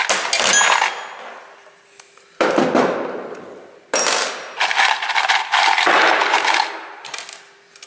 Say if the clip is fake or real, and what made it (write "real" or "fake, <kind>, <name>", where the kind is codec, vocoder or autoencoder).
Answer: real